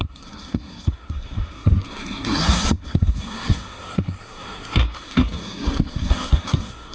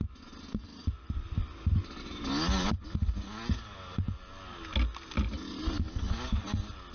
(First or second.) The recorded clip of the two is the second